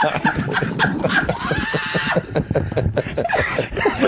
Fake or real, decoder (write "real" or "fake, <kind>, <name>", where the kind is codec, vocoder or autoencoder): real